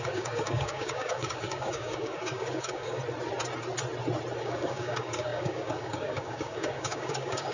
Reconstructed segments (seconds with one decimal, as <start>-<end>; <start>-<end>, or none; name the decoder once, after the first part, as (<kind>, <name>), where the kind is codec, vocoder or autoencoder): 0.0-3.0 (codec, DAC); 4.4-7.5